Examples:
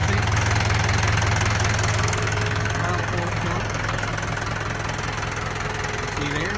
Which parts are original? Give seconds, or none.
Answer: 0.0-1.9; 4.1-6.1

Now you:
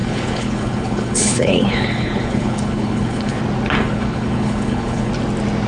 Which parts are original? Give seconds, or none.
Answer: 3.4-3.8; 5.1-5.7